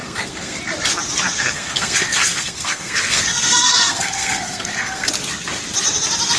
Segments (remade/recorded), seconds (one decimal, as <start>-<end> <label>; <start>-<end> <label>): 0.0-0.6 remade; 0.6-1.3 recorded; 1.3-5.1 remade; 5.1-6.4 recorded